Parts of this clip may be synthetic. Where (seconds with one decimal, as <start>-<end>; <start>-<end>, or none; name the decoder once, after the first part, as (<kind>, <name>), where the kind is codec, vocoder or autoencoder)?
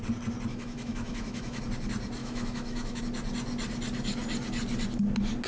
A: 0.5-1.6 (autoencoder, DAC-VAE); 2.2-3.0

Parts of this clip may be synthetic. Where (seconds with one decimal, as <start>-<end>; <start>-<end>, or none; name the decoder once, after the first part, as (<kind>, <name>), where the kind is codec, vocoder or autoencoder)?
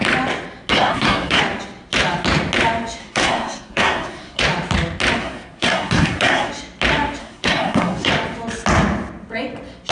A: 0.7-1.4 (codec, SNAC); 3.0-4.4; 5.2-6.5; 7.2-8.1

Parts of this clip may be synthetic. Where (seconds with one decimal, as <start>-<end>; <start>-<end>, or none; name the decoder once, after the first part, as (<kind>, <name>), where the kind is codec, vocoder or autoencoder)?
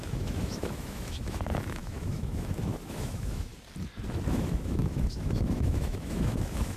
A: 0.0-3.5 (autoencoder, DAC-VAE); 4.3-6.8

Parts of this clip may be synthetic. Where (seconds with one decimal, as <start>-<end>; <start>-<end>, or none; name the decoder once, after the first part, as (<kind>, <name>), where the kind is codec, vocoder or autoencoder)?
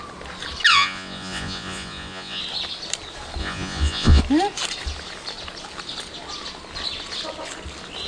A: 0.7-2.4 (vocoder, Vocos); 3.4-4.2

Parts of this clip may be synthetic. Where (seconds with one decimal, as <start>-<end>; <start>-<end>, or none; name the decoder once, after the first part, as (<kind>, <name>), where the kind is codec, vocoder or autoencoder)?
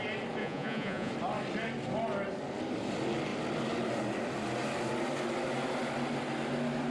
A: 0.4-1.1 (vocoder, Vocos)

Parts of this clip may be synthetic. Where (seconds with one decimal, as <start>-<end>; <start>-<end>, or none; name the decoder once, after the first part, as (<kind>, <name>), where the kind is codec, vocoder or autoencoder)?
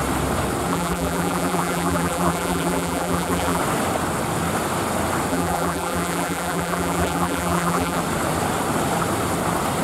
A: 0.7-3.6 (vocoder, BigVGAN v2); 5.3-8.0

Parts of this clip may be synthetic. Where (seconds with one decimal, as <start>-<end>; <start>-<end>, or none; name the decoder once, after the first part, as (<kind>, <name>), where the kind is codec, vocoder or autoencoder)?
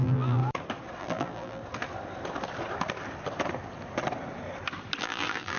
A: 0.0-0.4 (vocoder, BigVGAN v2); 1.0-1.6; 5.0-5.6